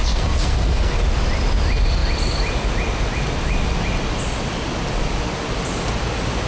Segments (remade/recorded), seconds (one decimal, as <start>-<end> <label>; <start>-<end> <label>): 0.0-1.0 remade; 1.0-6.5 recorded